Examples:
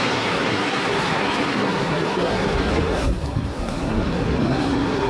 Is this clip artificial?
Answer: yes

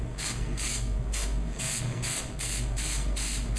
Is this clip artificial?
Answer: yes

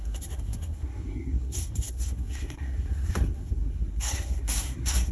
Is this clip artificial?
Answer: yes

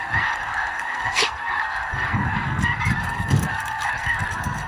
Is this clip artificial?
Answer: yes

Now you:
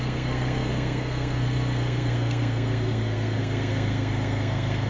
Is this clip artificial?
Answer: yes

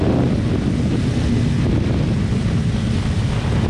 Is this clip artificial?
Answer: no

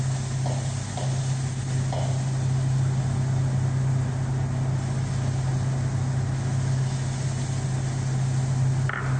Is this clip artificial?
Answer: no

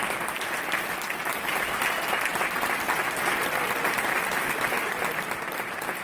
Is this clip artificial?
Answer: no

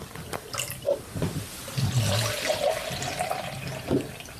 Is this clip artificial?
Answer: no